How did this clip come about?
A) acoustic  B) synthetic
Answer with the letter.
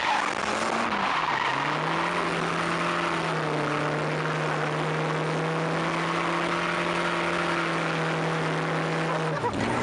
A